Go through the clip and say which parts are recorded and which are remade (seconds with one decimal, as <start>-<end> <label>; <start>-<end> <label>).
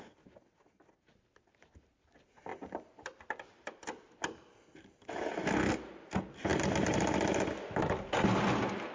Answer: 0.0-8.9 recorded